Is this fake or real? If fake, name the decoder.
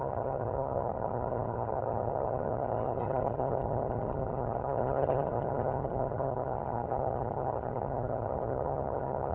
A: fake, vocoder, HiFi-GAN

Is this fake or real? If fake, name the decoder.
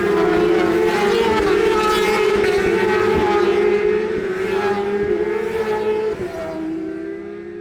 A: real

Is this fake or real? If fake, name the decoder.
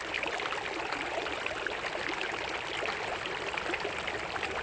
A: real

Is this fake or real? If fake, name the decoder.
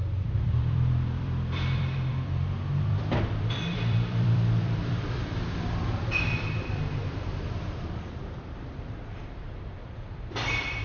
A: fake, vocoder, BigVGAN v2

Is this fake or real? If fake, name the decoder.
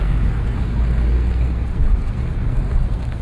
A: fake, codec, SNAC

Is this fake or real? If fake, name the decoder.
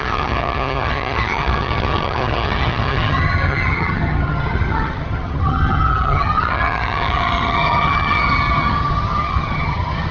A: fake, vocoder, HiFi-GAN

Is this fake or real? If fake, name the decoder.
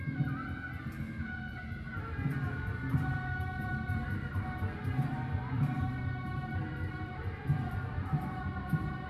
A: fake, vocoder, BigVGAN v2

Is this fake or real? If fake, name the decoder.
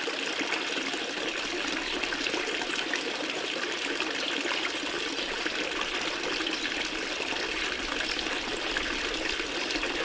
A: real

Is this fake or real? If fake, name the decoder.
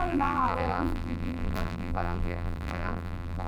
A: fake, vocoder, BigVGAN v2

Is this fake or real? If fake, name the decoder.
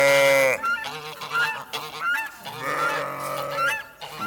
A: real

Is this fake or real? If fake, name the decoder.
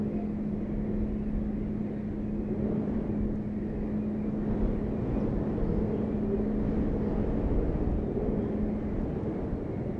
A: real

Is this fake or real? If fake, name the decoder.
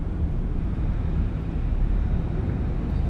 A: fake, vocoder, BigVGAN v2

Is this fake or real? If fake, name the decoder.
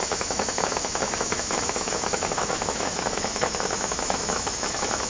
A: fake, autoencoder, DAC-VAE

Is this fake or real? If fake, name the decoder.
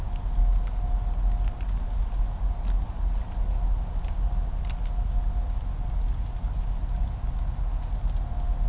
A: real